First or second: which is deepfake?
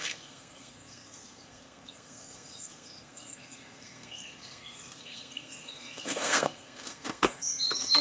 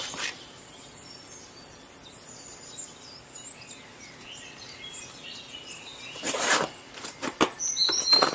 first